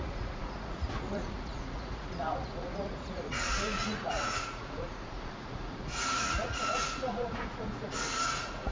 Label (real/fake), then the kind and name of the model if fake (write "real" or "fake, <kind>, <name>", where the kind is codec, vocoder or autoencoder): fake, vocoder, Vocos